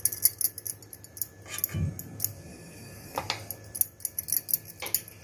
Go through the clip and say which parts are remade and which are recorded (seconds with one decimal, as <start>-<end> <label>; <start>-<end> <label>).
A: 0.0-2.5 recorded; 2.5-3.2 remade; 3.2-5.2 recorded